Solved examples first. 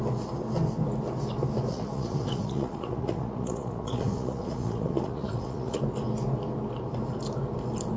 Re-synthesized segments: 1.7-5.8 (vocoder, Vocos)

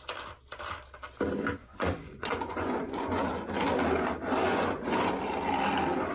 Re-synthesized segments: 1.6-3.2 (vocoder, Vocos); 4.4-5.1

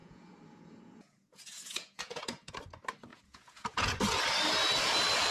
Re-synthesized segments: 0.0-2.5 (vocoder, Vocos); 3.1-4.0

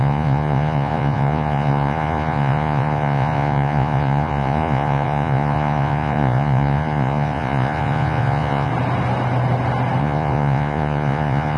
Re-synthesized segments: 0.0-8.7 (vocoder, Vocos); 10.0-11.6

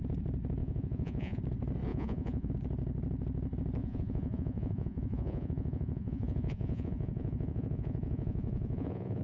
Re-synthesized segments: 0.6-1.4 (vocoder, Vocos); 1.9-2.5; 3.8-9.2

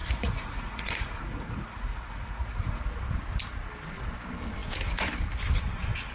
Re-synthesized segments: 0.0-2.8 (vocoder, Vocos)

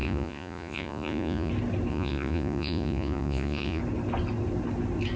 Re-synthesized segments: 0.0-1.5 (vocoder, Vocos); 1.9-3.8